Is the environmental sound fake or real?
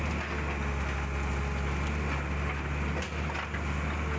real